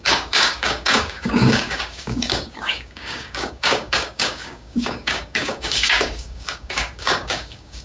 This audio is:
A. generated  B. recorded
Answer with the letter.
A